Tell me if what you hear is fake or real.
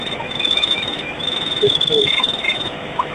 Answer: fake